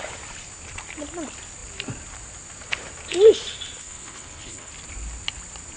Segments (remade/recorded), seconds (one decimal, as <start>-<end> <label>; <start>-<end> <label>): 0.0-3.8 recorded; 3.8-4.7 remade; 4.7-5.8 recorded